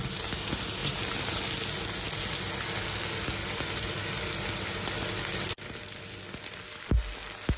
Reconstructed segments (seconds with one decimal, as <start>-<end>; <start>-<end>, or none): none